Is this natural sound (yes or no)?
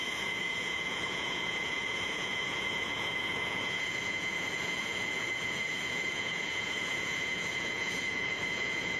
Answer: no